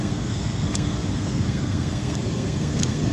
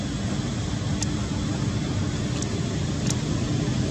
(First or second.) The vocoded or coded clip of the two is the first